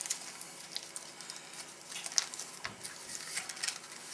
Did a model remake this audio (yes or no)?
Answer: no